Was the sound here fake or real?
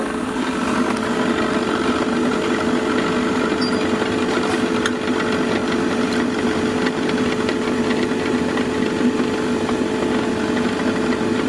real